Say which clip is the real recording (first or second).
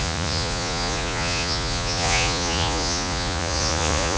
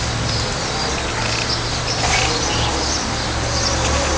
second